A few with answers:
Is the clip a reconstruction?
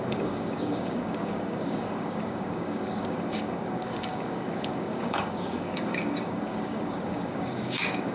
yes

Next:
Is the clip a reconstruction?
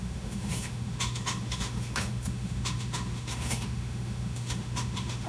yes